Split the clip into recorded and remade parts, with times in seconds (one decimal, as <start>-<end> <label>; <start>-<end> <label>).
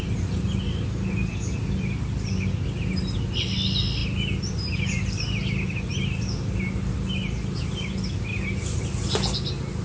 0.0-9.8 recorded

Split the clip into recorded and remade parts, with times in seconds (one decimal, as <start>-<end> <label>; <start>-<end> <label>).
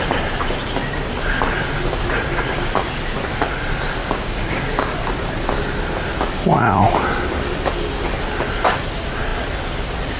0.0-4.0 recorded; 4.0-4.6 remade; 4.6-10.2 recorded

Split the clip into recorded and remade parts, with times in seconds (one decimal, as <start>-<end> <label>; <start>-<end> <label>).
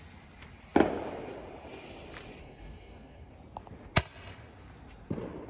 0.0-2.4 recorded; 2.4-3.3 remade; 3.3-5.5 recorded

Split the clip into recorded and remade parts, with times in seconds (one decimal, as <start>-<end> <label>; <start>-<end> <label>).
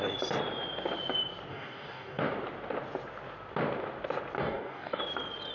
0.0-1.5 recorded; 1.5-2.2 remade; 2.2-4.4 recorded; 4.4-5.0 remade; 5.0-5.5 recorded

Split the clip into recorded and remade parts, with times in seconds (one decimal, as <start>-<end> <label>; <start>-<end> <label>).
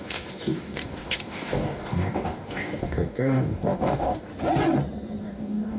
0.0-4.3 remade; 4.3-5.2 recorded; 5.2-5.8 remade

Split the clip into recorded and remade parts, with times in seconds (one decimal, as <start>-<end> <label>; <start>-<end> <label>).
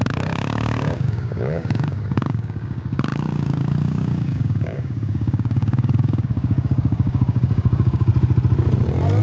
0.0-8.1 remade; 8.1-9.2 recorded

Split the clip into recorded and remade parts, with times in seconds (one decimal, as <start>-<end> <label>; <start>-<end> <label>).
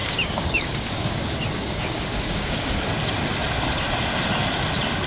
0.0-2.8 remade; 2.8-5.1 recorded